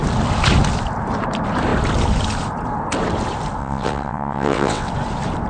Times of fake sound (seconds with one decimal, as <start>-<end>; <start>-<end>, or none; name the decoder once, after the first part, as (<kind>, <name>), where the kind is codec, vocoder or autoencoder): 3.6-4.9 (vocoder, WaveNeXt)